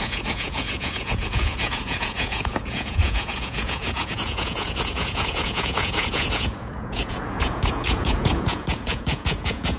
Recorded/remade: remade